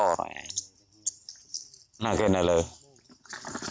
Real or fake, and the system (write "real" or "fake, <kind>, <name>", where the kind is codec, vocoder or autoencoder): real